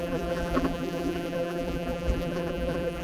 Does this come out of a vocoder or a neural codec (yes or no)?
yes